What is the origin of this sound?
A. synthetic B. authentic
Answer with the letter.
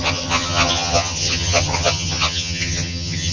A